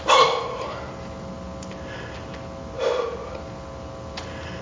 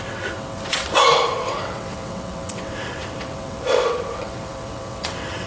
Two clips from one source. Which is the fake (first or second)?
second